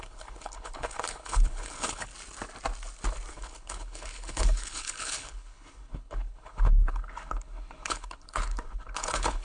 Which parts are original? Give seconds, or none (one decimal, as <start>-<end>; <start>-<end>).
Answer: 2.1-3.3